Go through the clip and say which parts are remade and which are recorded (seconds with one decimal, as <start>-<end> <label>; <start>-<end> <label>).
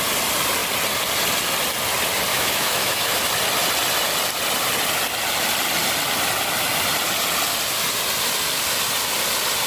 0.0-2.3 recorded; 2.3-3.2 remade; 3.2-9.7 recorded